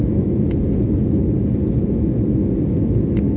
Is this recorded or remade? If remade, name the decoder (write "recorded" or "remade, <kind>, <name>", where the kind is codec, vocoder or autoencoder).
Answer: recorded